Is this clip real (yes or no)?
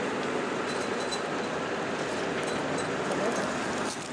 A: yes